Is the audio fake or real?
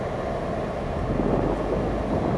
real